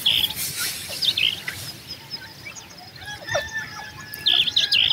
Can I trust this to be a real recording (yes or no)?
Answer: yes